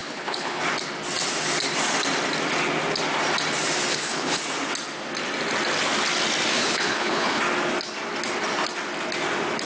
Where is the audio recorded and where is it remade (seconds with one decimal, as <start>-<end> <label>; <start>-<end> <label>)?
0.0-0.6 remade; 0.6-3.9 recorded; 3.9-4.4 remade; 4.4-6.5 recorded; 6.5-7.4 remade; 7.4-9.7 recorded